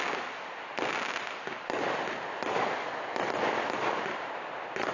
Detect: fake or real real